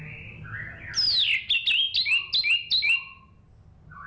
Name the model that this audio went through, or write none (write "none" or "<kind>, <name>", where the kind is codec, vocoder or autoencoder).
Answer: none